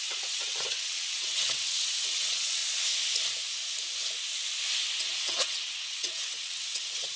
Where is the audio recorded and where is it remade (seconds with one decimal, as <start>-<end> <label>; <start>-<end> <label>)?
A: 0.0-2.6 remade; 2.6-5.0 recorded; 5.0-7.2 remade